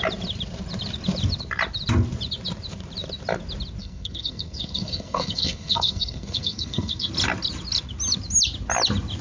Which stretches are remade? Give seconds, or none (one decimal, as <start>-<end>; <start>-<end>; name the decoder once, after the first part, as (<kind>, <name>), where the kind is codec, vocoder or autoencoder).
3.8-7.1 (codec, SNAC)